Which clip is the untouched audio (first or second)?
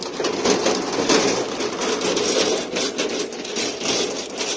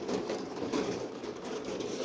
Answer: first